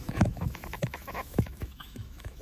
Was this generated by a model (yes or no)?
yes